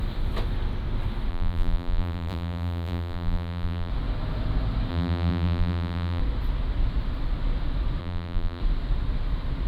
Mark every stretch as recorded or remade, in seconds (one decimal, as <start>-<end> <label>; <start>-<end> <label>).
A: 0.0-1.3 recorded; 1.3-3.9 remade; 3.9-4.9 recorded; 4.9-6.2 remade; 6.2-8.0 recorded; 8.0-8.6 remade; 8.6-9.7 recorded